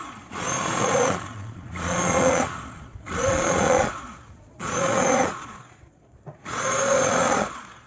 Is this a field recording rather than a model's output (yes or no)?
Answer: no